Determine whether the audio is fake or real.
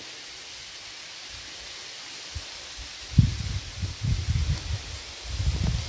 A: real